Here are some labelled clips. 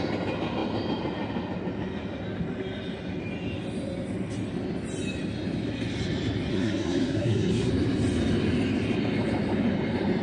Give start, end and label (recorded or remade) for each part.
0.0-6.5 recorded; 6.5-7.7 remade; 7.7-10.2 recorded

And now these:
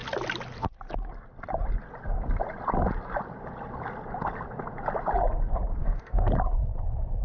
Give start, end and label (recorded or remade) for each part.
0.0-5.8 recorded; 5.8-6.3 remade; 6.3-7.2 recorded

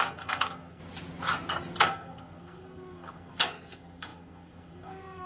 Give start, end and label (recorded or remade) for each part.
0.0-0.8 remade; 0.8-1.8 recorded; 1.8-5.3 remade

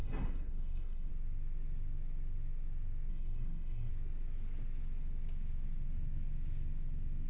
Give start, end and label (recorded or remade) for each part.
0.0-1.1 remade; 1.1-3.1 recorded; 3.1-3.9 remade; 3.9-7.3 recorded

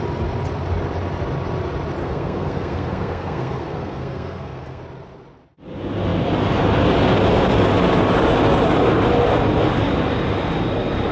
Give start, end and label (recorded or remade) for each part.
0.0-2.0 recorded; 2.0-4.8 remade; 4.8-11.1 recorded

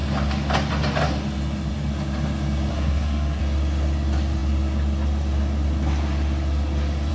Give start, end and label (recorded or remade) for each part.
0.0-2.7 recorded; 2.7-3.4 remade; 3.4-7.1 recorded